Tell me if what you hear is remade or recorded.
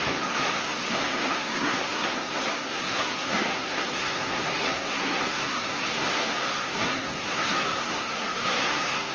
remade